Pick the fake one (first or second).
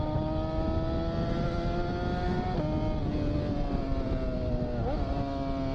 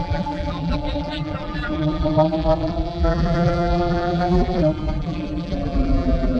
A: second